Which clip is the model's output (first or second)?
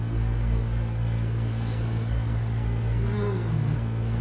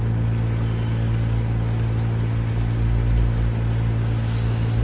first